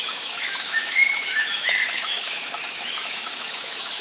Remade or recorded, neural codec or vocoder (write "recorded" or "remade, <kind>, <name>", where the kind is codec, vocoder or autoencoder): remade, autoencoder, DAC-VAE